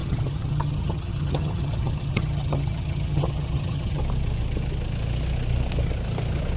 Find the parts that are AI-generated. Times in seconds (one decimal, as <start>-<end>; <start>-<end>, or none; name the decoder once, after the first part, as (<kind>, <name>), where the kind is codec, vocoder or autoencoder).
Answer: 0.0-4.0 (vocoder, HiFi-GAN)